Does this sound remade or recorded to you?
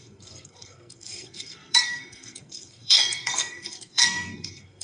remade